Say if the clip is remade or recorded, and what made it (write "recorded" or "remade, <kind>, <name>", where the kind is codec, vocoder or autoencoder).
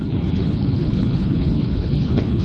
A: remade, codec, HILCodec